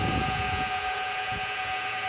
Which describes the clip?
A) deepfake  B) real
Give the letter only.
A